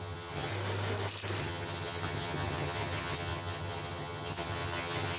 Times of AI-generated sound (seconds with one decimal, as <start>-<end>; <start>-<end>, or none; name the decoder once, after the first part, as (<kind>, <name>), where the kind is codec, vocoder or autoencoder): 0.0-0.5 (vocoder, HiFi-GAN); 1.4-5.2